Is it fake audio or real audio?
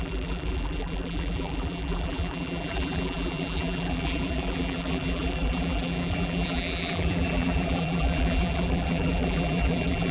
fake